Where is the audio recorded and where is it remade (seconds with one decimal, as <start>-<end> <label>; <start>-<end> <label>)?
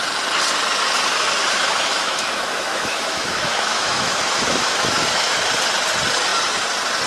0.0-1.1 recorded; 1.1-5.4 remade; 5.4-7.1 recorded